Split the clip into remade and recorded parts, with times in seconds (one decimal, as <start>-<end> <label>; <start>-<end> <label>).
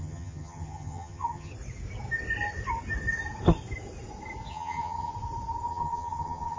0.0-1.5 remade; 1.5-4.5 recorded; 4.5-5.1 remade; 5.1-5.7 recorded; 5.7-6.6 remade